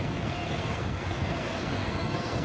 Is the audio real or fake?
fake